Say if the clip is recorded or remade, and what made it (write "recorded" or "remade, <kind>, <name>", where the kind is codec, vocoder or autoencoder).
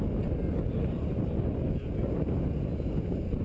recorded